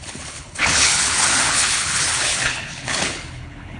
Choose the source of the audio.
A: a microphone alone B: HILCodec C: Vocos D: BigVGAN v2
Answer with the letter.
B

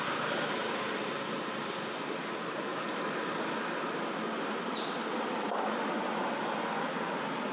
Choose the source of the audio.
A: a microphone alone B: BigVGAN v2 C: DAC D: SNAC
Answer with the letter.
A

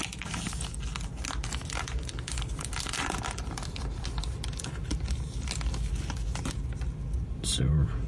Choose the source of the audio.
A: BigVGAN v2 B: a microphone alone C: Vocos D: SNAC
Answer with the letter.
B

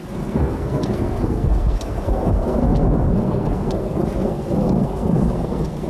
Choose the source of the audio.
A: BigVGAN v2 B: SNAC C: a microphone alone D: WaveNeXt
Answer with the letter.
B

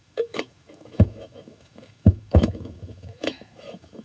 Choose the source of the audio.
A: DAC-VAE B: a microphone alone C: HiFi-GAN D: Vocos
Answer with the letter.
A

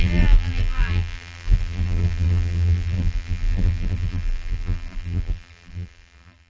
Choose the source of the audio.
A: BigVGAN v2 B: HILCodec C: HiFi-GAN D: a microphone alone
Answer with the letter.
A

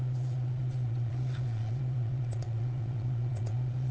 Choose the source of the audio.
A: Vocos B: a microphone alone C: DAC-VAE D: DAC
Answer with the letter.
A